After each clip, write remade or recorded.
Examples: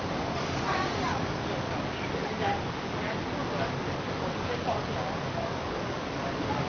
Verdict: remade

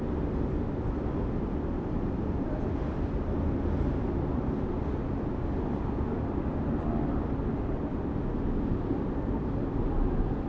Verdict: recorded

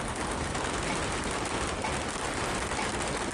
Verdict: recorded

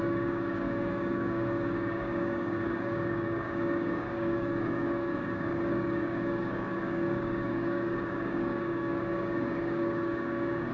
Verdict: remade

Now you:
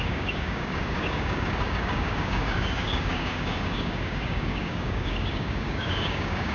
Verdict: remade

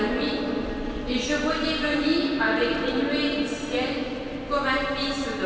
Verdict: recorded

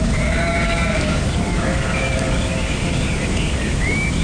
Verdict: remade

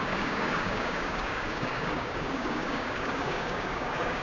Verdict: remade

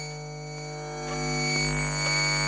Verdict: recorded